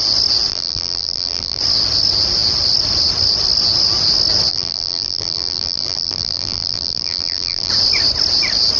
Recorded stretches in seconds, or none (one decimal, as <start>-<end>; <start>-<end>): 0.0-0.5; 1.6-4.5; 7.7-8.8